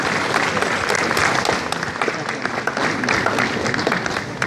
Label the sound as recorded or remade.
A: recorded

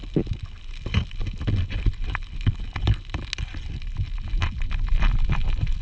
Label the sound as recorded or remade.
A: recorded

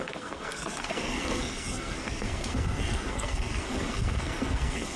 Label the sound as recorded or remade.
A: remade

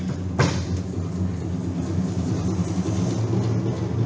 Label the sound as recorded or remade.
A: recorded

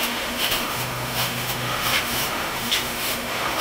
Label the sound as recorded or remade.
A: remade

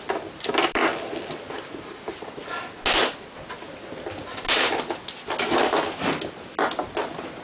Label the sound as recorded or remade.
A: recorded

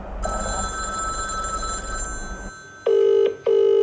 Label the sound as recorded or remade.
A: recorded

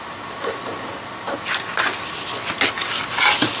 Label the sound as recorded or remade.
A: recorded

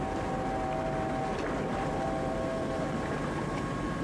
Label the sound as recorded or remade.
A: recorded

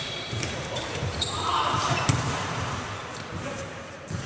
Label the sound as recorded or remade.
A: remade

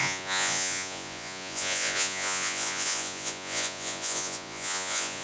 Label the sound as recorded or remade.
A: remade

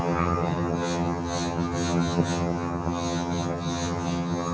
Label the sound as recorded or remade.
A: remade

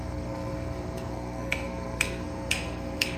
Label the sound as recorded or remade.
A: remade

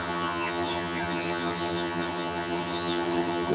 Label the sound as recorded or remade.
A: remade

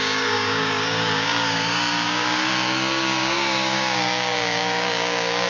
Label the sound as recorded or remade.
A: remade